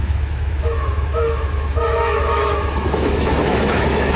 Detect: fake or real fake